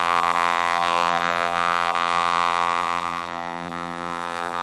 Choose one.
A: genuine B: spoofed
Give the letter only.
B